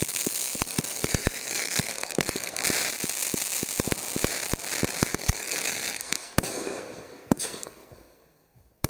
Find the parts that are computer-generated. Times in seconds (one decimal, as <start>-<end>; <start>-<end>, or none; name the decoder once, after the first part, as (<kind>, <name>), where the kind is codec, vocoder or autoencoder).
0.0-2.6 (codec, SNAC); 5.0-8.9